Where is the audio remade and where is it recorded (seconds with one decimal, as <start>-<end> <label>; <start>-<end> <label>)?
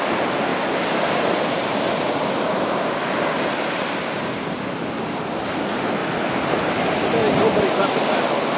0.0-8.6 recorded